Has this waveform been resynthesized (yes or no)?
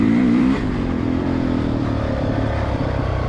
yes